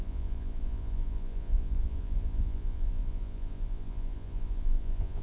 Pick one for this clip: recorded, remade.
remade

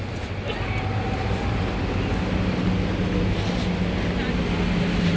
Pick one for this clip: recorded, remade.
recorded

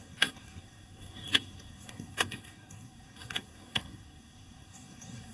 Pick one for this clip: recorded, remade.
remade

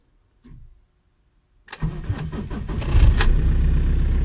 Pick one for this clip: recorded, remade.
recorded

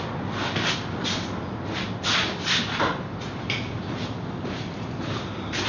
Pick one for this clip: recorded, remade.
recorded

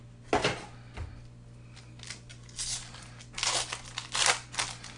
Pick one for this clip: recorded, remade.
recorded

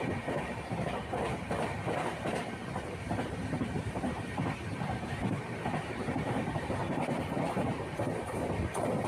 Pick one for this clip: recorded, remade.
remade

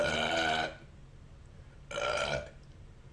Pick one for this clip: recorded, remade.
recorded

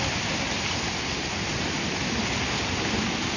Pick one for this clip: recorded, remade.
recorded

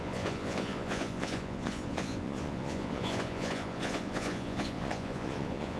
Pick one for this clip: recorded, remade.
remade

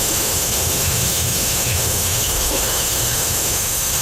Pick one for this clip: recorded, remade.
remade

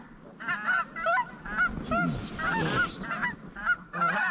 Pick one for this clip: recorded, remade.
recorded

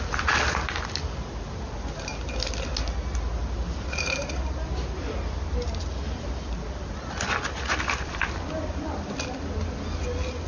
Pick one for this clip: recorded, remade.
recorded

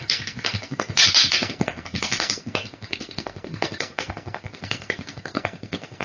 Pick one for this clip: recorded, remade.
remade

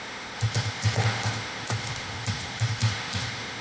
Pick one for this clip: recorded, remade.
remade